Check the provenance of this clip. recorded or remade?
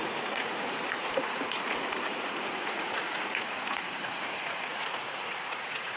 remade